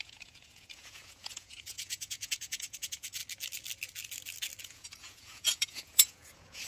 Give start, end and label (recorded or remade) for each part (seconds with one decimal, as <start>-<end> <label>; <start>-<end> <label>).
0.0-3.2 remade; 3.2-4.6 recorded; 4.6-6.7 remade